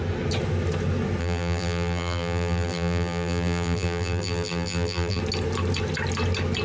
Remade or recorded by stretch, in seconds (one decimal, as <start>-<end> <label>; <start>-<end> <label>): 0.0-1.2 recorded; 1.2-5.2 remade; 5.2-6.6 recorded